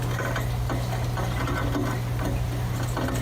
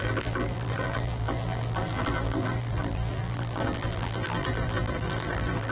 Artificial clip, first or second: second